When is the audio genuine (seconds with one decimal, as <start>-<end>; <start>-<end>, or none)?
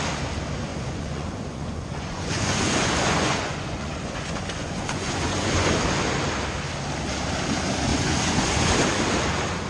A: 0.0-0.7; 5.8-7.9; 8.7-9.7